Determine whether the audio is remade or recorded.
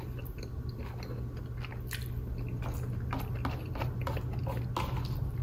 recorded